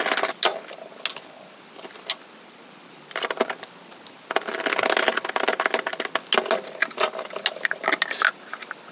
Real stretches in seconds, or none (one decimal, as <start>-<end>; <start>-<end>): 0.0-8.9